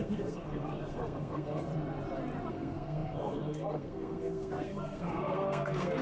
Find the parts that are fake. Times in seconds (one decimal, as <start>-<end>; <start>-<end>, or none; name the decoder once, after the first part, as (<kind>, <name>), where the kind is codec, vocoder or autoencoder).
0.0-1.7 (codec, SNAC); 2.5-6.0